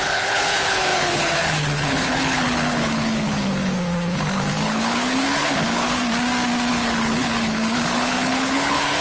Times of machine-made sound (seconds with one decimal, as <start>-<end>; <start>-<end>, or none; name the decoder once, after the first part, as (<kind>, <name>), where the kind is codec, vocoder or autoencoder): 0.0-6.0 (codec, HILCodec); 6.7-9.0